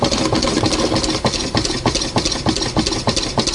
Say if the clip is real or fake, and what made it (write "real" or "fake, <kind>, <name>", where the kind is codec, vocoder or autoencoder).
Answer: real